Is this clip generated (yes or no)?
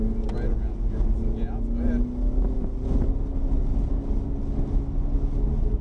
no